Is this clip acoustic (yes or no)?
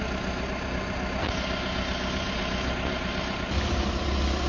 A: yes